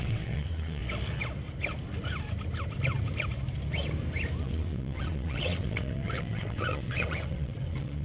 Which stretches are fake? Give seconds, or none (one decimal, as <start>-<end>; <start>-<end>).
0.0-0.8; 4.4-8.0